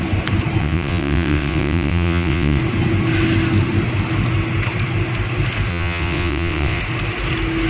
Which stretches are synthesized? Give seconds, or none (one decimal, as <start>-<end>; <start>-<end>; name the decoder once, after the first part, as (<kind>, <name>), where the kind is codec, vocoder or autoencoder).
0.6-2.6 (vocoder, WaveNeXt); 5.7-6.8